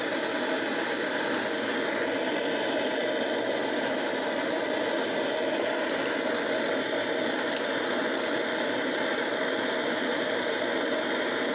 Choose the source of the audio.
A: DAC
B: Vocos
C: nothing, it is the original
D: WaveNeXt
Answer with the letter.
C